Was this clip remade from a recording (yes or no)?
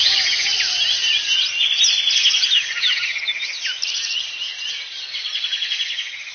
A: no